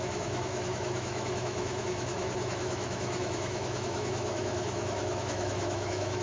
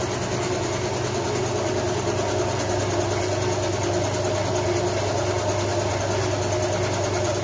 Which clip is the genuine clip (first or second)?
second